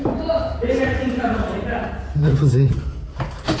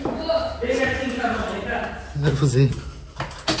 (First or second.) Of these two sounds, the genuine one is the second